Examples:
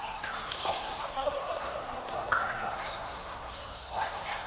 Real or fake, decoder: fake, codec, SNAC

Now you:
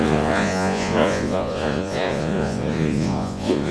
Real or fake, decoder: fake, vocoder, Vocos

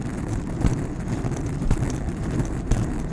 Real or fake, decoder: fake, vocoder, BigVGAN v2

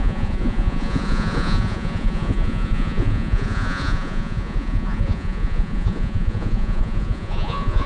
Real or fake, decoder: fake, vocoder, Vocos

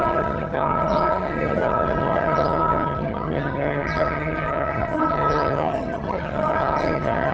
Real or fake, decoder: fake, vocoder, HiFi-GAN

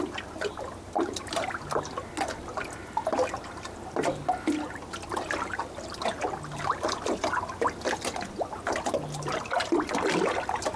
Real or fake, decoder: real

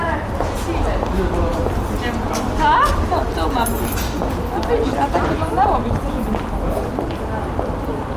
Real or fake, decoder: real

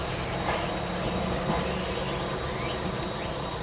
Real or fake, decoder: real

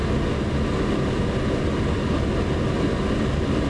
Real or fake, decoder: real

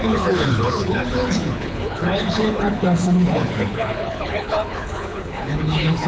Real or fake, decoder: fake, codec, HILCodec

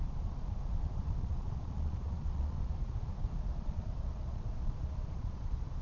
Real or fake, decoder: fake, vocoder, Vocos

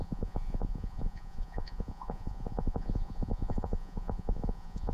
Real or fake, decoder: fake, vocoder, Vocos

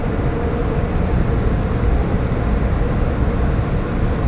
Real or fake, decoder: fake, vocoder, BigVGAN v2